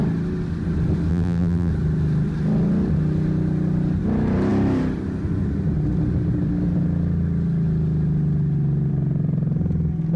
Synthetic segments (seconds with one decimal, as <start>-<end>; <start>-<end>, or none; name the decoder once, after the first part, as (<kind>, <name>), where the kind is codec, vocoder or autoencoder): 1.1-1.7 (vocoder, BigVGAN v2)